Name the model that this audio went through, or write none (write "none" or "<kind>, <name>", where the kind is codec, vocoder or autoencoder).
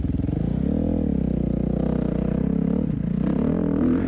none